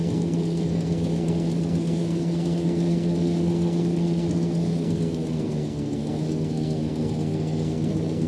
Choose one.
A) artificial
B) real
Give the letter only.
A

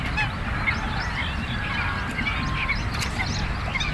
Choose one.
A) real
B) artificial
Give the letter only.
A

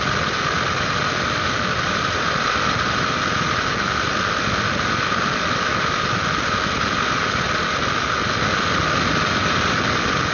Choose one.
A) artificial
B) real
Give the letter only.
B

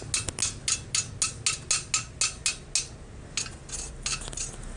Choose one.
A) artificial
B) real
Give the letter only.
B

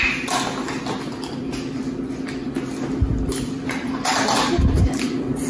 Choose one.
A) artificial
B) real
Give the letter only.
B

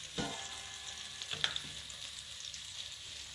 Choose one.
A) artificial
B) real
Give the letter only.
B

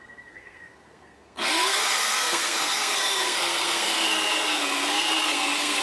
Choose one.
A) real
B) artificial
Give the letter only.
B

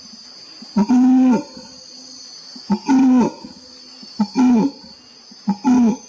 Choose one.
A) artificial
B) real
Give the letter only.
B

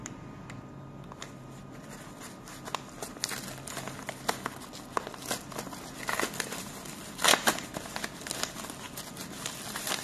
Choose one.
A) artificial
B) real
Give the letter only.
B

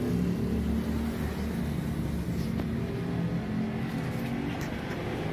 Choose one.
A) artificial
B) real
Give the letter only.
B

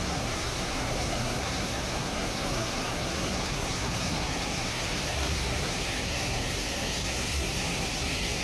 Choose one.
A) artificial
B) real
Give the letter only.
A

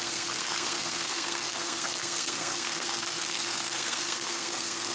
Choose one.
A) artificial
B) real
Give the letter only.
A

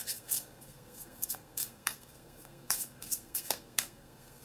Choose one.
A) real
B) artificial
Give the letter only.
B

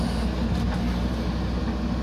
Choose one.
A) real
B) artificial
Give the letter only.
A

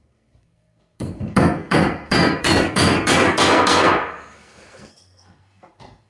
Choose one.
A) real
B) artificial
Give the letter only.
B